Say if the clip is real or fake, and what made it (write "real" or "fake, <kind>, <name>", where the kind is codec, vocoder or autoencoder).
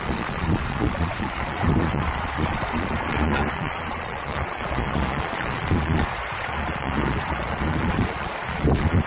fake, vocoder, Vocos